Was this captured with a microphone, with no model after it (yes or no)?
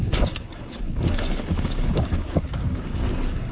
no